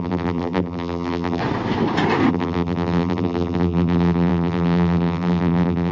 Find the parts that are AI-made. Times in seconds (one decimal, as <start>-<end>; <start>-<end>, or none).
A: 0.0-1.4; 2.3-5.9